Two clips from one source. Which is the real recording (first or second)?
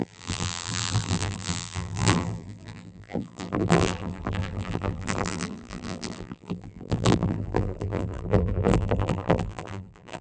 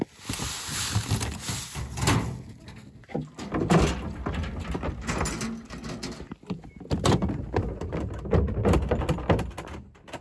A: second